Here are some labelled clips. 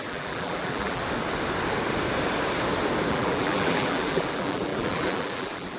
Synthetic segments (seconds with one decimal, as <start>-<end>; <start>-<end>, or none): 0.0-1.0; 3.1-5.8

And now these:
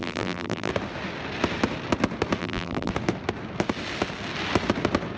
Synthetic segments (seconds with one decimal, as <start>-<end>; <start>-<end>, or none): 0.0-0.7; 2.4-2.9

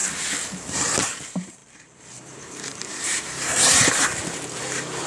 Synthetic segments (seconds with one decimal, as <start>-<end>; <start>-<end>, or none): 0.6-5.1